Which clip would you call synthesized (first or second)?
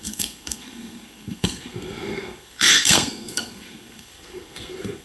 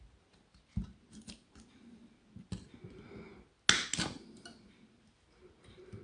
first